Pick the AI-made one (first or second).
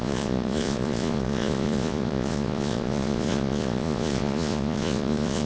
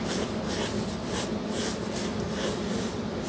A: first